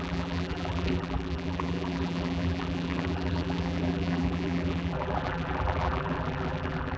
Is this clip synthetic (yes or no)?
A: yes